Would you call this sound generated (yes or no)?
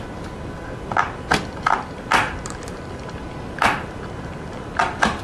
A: yes